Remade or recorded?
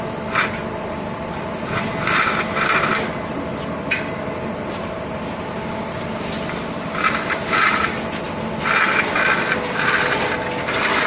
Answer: recorded